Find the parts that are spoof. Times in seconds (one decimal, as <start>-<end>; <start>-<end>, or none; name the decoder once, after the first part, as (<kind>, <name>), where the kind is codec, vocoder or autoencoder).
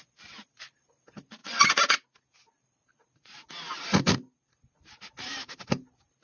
0.0-1.4 (vocoder, BigVGAN v2); 2.4-6.2